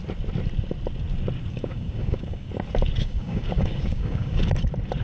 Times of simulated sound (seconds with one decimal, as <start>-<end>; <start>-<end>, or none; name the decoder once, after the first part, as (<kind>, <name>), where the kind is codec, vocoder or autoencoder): 1.5-2.5 (codec, DAC); 3.0-4.4